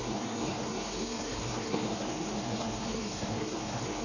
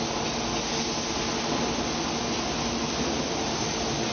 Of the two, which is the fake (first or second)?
first